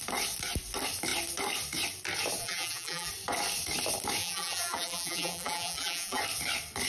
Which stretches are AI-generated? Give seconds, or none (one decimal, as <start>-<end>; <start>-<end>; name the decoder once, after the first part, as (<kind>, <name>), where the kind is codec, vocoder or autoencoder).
2.4-3.1 (vocoder, BigVGAN v2); 4.2-6.2